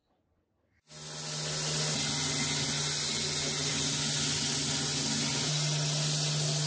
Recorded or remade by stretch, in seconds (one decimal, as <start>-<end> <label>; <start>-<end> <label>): 0.0-6.7 recorded